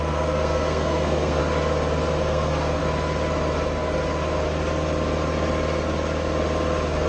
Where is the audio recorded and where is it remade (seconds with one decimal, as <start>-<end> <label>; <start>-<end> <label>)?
0.0-1.4 remade; 1.4-2.2 recorded; 2.2-2.8 remade; 2.8-7.1 recorded